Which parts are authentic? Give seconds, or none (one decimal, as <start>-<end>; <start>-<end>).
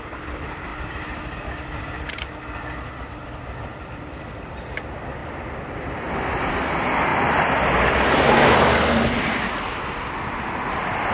0.0-3.7; 4.3-5.2; 6.1-7.1; 8.3-11.1